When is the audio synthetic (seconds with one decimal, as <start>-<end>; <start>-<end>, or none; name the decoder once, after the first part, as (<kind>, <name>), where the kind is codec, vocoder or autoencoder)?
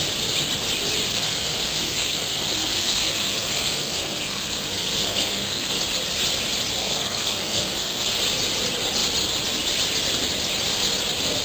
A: 1.1-5.8 (codec, SNAC); 6.8-8.2